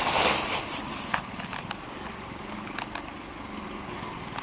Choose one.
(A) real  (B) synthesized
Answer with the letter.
A